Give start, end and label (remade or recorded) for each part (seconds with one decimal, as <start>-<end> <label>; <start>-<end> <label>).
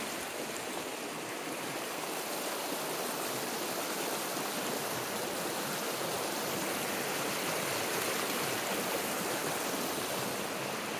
0.0-11.0 recorded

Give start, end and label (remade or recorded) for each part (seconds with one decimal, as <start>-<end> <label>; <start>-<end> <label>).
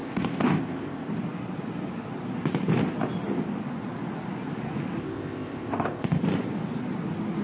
0.0-1.1 remade; 1.1-5.0 recorded; 5.0-6.2 remade; 6.2-7.4 recorded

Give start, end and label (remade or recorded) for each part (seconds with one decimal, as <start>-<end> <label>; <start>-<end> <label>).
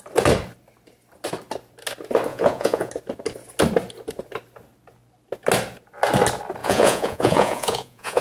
0.0-2.3 recorded; 2.3-2.9 remade; 2.9-6.6 recorded; 6.6-8.2 remade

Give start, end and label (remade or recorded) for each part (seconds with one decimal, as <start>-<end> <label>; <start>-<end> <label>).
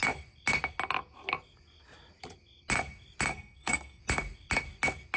0.0-3.3 recorded; 3.3-4.0 remade; 4.0-5.2 recorded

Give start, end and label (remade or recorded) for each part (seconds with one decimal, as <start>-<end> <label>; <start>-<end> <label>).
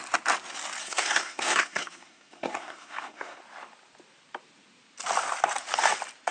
0.0-0.8 recorded; 0.8-3.4 remade; 3.4-6.3 recorded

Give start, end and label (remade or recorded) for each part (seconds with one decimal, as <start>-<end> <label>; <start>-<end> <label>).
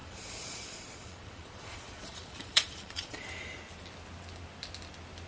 0.0-3.2 remade; 3.2-5.3 recorded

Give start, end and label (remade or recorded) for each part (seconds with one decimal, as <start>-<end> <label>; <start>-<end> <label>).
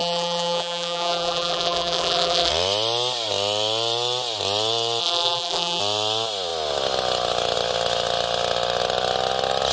0.0-2.5 remade; 2.5-5.0 recorded; 5.0-5.8 remade; 5.8-9.7 recorded